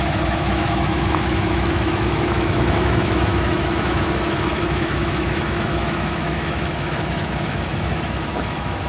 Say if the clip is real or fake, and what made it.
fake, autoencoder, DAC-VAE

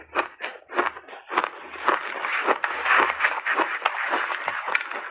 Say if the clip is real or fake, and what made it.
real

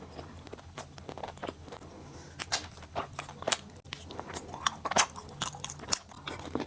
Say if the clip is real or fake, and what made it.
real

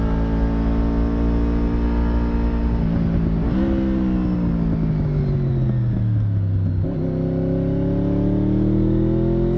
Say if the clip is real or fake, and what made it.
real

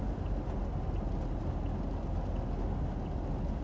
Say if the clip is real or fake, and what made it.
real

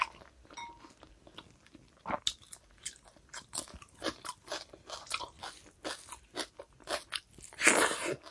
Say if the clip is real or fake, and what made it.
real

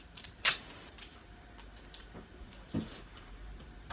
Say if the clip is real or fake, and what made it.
fake, vocoder, BigVGAN v2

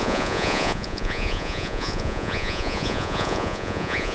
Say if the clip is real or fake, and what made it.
fake, vocoder, Vocos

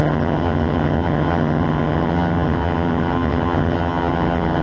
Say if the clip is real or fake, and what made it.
fake, vocoder, HiFi-GAN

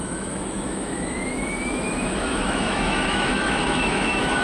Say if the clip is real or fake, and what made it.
fake, autoencoder, DAC-VAE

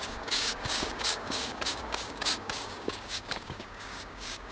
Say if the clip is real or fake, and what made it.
fake, codec, DAC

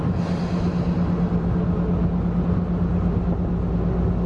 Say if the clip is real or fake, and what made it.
real